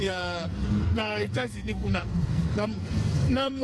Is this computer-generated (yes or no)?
yes